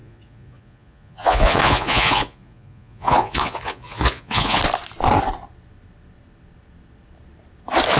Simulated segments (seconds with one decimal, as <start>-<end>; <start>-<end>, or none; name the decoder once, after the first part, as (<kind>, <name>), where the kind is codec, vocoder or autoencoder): 0.0-4.6 (vocoder, Vocos)